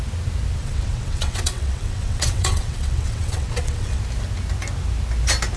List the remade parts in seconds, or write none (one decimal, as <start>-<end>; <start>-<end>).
0.6-4.0